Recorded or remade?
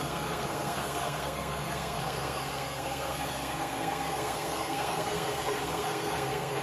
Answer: remade